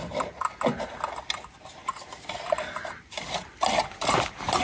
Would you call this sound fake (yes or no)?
no